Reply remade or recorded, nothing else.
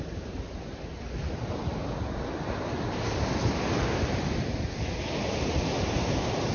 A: recorded